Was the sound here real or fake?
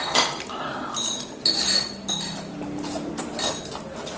real